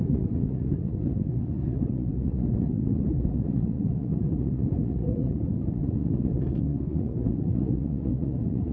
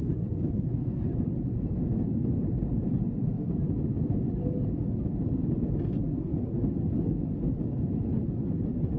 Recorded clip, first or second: second